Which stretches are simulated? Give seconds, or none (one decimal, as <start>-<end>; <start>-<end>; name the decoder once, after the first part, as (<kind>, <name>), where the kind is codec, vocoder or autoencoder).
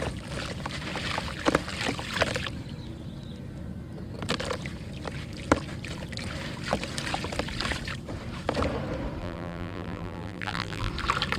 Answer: 9.2-10.9 (vocoder, BigVGAN v2)